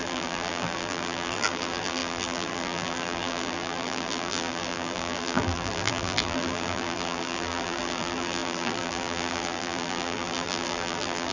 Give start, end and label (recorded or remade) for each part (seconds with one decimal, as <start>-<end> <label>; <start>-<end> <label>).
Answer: 0.0-11.3 remade